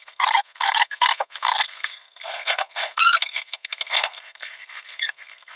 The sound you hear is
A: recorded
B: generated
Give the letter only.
B